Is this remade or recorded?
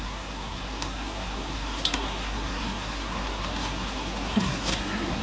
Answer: remade